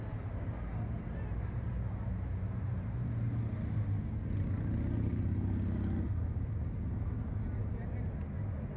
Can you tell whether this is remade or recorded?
recorded